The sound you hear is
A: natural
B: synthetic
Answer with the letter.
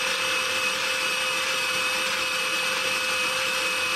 A